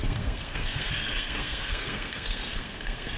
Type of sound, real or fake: fake